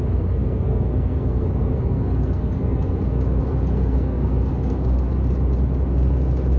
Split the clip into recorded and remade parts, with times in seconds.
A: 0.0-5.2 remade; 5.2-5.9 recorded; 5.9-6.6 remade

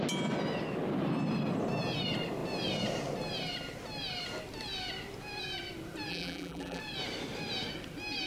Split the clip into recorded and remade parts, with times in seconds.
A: 0.0-6.1 recorded; 6.1-6.8 remade; 6.8-8.3 recorded

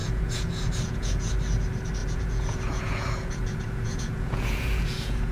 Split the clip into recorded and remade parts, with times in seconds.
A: 0.0-1.3 remade; 1.3-2.0 recorded; 2.0-5.3 remade

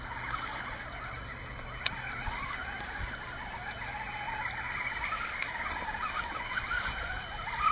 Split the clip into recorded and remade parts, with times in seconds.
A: 0.0-7.7 recorded

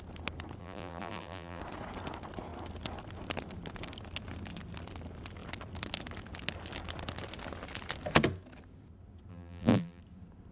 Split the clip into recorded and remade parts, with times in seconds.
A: 0.0-0.6 recorded; 0.6-1.6 remade; 1.6-9.3 recorded; 9.3-10.0 remade; 10.0-10.5 recorded

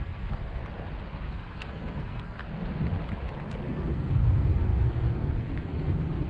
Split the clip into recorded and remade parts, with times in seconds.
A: 0.0-0.6 remade; 0.6-1.3 recorded; 1.3-2.4 remade; 2.4-3.7 recorded; 3.7-6.3 remade

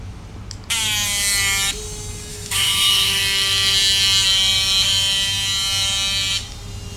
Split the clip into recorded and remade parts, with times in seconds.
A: 0.0-2.3 recorded; 2.3-3.2 remade; 3.2-7.0 recorded

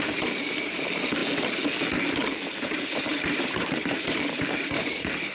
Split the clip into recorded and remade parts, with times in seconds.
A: 0.0-1.2 remade; 1.2-2.1 recorded; 2.1-5.3 remade